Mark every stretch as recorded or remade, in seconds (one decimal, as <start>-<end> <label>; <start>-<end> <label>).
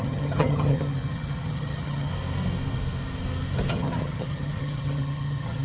0.0-2.1 remade; 2.1-3.7 recorded; 3.7-5.6 remade